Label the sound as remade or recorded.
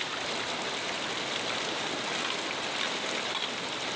recorded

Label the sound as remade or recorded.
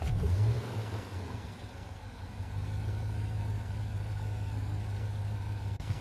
remade